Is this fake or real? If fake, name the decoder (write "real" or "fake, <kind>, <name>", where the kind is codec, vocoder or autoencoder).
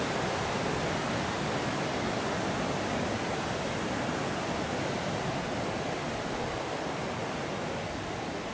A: real